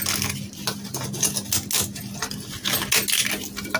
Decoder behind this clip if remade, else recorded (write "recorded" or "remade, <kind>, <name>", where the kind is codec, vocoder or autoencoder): recorded